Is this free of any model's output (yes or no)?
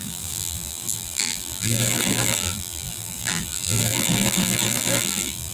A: no